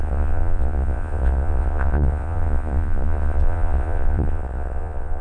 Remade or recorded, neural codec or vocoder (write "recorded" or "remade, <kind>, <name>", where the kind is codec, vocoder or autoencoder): remade, vocoder, Vocos